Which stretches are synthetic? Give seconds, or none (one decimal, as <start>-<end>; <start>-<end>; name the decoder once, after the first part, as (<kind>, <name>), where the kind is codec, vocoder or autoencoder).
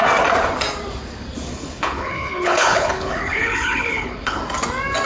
1.5-4.4 (codec, HILCodec)